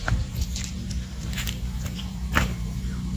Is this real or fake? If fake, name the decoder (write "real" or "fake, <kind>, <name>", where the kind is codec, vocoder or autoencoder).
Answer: fake, vocoder, BigVGAN v2